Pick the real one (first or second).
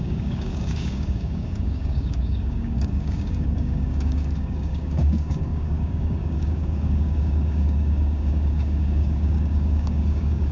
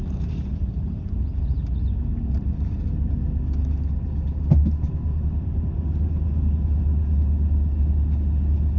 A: second